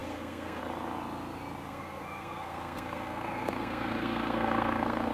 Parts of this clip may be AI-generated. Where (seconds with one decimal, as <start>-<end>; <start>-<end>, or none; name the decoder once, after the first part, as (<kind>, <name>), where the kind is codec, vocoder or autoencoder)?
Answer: 0.0-0.6 (codec, SNAC); 1.7-5.1